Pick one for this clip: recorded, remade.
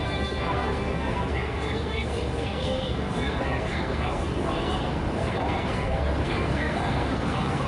remade